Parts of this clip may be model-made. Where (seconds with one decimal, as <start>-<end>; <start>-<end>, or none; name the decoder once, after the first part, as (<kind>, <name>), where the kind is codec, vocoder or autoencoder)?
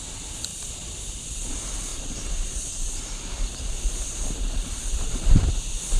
0.5-1.2 (vocoder, BigVGAN v2); 1.9-5.5